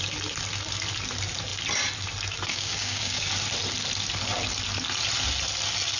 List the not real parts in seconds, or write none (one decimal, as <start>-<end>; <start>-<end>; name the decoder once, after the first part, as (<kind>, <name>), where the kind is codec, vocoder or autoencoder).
2.5-3.3 (codec, DAC)